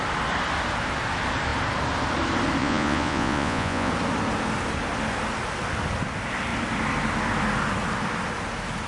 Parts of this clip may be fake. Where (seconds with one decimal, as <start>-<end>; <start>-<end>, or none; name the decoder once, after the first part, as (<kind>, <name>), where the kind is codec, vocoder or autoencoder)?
2.6-3.9 (vocoder, Vocos)